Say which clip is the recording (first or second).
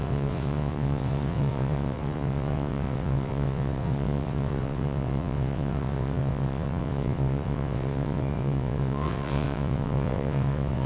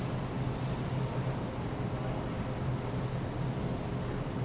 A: second